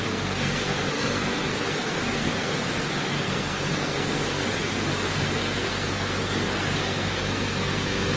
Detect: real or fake fake